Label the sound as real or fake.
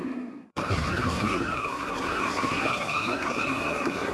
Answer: fake